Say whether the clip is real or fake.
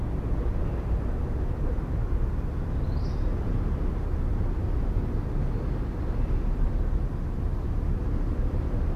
real